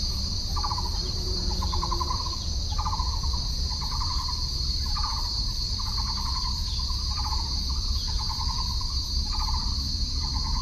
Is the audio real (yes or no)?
no